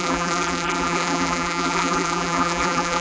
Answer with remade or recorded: remade